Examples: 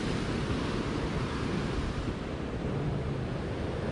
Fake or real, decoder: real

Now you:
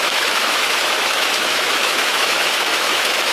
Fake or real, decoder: fake, autoencoder, DAC-VAE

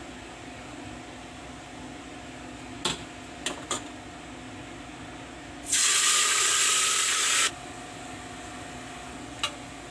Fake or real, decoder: real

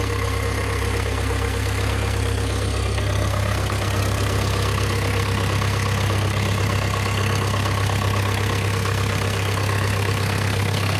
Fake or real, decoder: fake, codec, SNAC